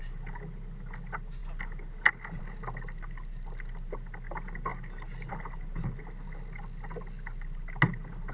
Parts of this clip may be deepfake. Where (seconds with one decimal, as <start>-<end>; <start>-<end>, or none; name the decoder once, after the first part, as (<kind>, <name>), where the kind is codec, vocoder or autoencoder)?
none

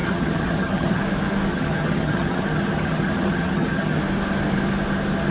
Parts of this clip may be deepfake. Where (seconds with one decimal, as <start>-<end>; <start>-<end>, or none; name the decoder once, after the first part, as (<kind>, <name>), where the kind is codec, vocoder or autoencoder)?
0.0-1.0 (vocoder, HiFi-GAN); 1.5-4.0

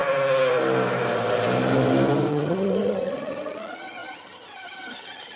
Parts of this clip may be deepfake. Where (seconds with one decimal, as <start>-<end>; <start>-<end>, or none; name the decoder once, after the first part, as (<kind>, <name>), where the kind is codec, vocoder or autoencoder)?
2.3-5.4 (vocoder, HiFi-GAN)

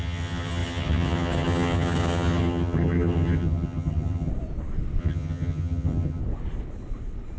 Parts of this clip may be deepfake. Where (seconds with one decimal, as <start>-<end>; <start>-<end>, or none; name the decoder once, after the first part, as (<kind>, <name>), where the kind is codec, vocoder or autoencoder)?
0.0-4.3 (vocoder, HiFi-GAN); 5.0-6.2

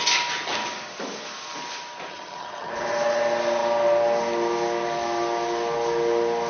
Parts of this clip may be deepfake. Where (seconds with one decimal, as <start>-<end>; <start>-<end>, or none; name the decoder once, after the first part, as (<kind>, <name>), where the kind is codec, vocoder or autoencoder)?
2.1-2.7 (vocoder, HiFi-GAN)